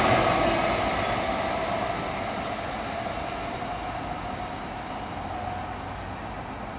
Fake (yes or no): no